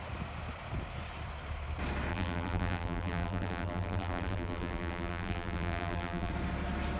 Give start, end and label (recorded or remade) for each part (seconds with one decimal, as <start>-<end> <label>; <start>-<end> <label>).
0.0-2.1 recorded; 2.1-6.3 remade; 6.3-7.0 recorded